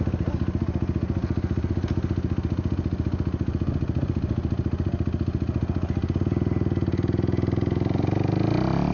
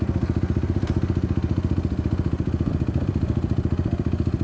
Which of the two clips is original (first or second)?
first